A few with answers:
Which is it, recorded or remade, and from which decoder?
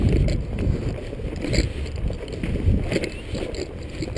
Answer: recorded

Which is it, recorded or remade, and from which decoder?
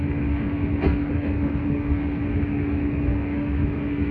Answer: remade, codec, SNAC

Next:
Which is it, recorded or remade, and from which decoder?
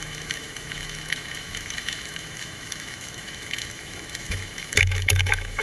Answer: remade, autoencoder, DAC-VAE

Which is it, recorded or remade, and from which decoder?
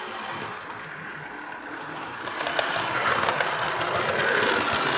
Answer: recorded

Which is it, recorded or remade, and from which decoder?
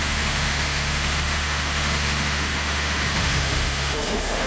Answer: remade, autoencoder, DAC-VAE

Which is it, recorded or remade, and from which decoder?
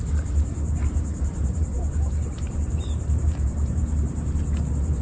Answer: remade, vocoder, BigVGAN v2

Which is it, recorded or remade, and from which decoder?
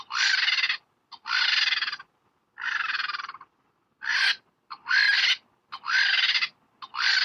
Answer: recorded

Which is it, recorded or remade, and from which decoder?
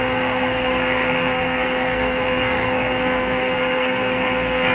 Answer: remade, codec, SNAC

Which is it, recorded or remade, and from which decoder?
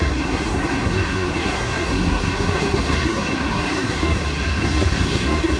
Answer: remade, codec, SNAC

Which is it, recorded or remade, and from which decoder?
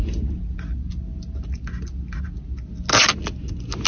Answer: recorded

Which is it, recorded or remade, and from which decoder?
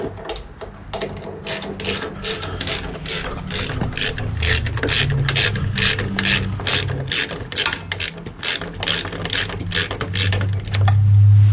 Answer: recorded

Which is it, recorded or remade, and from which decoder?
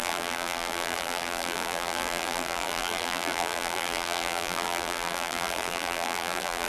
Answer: remade, vocoder, BigVGAN v2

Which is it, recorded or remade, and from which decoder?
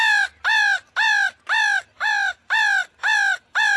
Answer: recorded